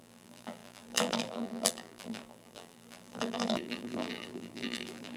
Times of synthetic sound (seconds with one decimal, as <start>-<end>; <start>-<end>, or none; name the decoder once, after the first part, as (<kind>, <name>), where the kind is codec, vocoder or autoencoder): 0.0-5.2 (vocoder, BigVGAN v2)